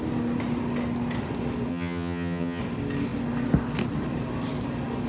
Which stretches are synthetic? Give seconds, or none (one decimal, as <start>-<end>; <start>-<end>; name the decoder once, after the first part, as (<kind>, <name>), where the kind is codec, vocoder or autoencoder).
1.7-2.6 (vocoder, HiFi-GAN)